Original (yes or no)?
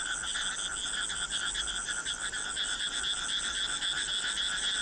yes